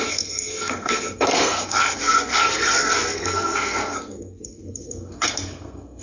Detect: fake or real fake